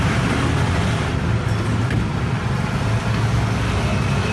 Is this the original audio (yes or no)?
yes